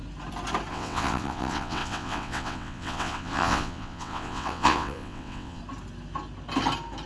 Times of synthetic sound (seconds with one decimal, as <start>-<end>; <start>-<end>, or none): 0.7-5.6